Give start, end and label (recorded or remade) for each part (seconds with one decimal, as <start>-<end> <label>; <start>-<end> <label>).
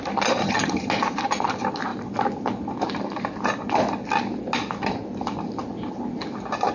0.0-0.4 recorded; 0.4-0.9 remade; 0.9-6.7 recorded